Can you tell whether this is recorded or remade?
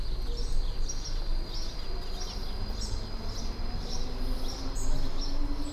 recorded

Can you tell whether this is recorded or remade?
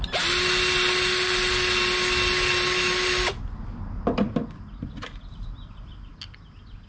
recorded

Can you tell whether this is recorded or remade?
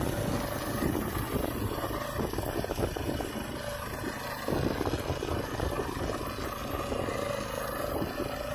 recorded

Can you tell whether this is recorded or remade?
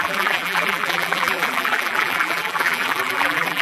remade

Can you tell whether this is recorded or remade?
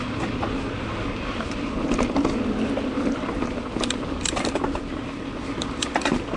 recorded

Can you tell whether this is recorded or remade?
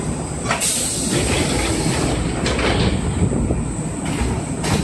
recorded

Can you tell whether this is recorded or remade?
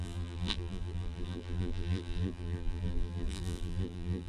remade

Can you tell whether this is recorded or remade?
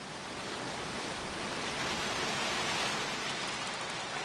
recorded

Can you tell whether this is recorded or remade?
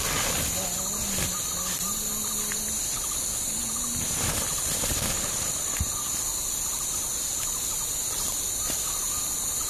recorded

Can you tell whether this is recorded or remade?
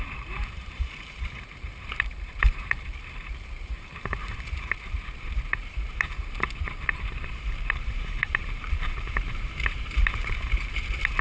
remade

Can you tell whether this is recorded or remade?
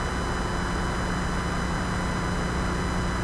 recorded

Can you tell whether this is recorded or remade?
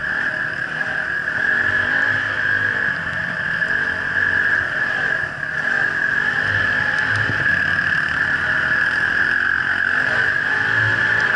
recorded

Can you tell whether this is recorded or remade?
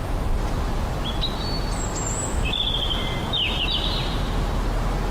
recorded